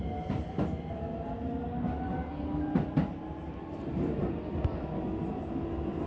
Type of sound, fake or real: real